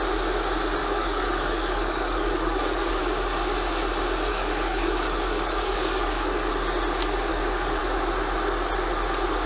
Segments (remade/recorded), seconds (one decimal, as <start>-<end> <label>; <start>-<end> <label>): 0.0-0.8 recorded; 0.8-3.0 remade; 3.0-4.3 recorded; 4.3-6.5 remade; 6.5-7.3 recorded; 7.3-7.8 remade; 7.8-9.5 recorded